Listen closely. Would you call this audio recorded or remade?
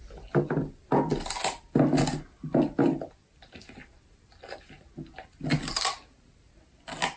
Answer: recorded